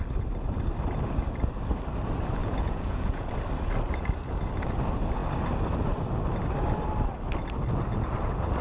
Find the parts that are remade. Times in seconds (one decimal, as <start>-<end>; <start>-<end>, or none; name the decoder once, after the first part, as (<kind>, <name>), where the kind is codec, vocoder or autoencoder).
2.4-3.3 (vocoder, Vocos)